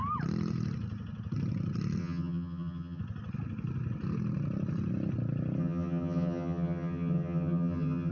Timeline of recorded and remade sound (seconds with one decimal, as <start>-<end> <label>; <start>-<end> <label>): 0.0-2.0 recorded; 2.0-3.0 remade; 3.0-5.6 recorded; 5.6-8.1 remade